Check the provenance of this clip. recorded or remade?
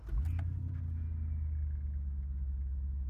recorded